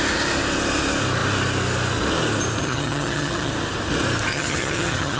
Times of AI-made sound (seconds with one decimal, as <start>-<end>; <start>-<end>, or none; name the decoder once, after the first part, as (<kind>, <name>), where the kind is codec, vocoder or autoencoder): 2.6-3.5 (vocoder, HiFi-GAN); 4.3-5.2